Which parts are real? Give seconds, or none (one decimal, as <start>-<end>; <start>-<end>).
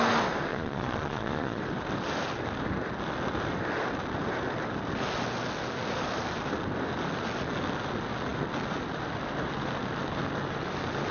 0.0-0.5; 1.6-11.1